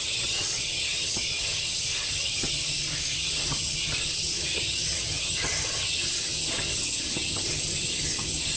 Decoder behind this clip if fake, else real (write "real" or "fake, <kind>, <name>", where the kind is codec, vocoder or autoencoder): fake, vocoder, HiFi-GAN